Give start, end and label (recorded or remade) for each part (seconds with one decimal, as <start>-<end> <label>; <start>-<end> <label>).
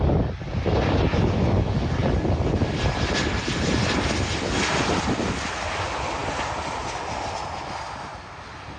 0.0-8.8 recorded